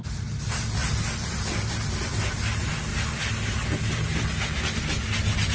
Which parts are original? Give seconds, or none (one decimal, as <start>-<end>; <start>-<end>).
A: 0.0-5.5